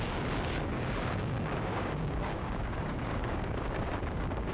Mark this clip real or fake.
fake